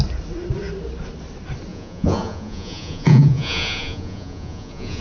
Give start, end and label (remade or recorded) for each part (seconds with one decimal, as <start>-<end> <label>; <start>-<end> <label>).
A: 0.0-1.7 recorded; 1.7-5.0 remade